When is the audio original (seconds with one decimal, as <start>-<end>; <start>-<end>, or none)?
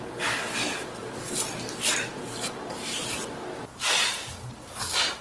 0.0-5.2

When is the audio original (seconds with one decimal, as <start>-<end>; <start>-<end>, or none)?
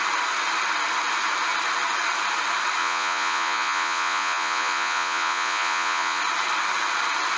0.0-2.8; 6.2-7.4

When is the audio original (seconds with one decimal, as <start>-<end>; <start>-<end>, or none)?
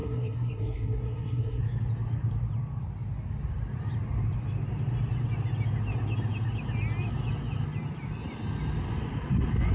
1.6-9.7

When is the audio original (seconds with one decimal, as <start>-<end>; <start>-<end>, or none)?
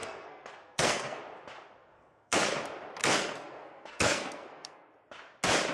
1.2-1.8; 2.4-3.0; 4.9-5.7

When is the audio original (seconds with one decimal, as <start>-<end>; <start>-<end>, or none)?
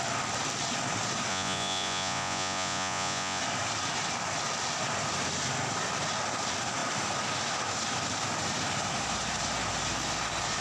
0.0-1.3; 3.4-10.6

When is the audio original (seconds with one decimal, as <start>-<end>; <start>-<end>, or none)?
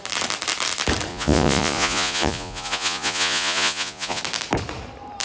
0.0-1.1; 4.2-5.2